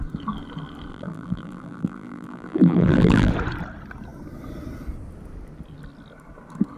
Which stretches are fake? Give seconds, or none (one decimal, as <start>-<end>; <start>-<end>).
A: 0.9-3.3